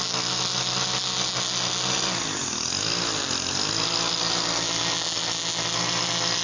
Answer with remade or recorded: recorded